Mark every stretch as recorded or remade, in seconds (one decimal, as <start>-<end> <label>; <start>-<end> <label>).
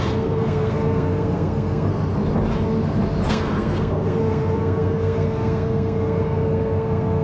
0.0-1.9 remade; 1.9-3.3 recorded; 3.3-7.2 remade